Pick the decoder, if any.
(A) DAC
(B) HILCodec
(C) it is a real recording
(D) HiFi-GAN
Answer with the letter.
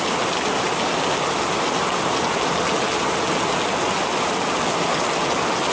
C